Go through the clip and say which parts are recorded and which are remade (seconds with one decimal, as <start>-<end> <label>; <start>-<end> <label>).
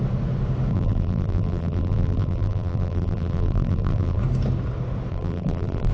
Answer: 0.0-0.7 recorded; 0.7-4.2 remade; 4.2-5.1 recorded; 5.1-5.9 remade